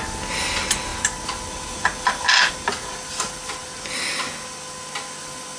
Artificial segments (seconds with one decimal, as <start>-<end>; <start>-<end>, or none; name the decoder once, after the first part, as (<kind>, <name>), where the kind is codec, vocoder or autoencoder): none